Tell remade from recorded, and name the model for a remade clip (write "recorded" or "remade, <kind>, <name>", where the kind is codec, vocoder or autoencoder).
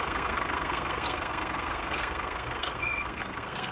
remade, codec, SNAC